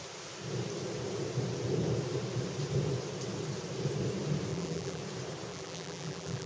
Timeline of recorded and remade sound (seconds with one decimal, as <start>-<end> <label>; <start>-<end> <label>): 0.0-4.5 recorded; 4.5-5.0 remade; 5.0-5.5 recorded; 5.5-6.5 remade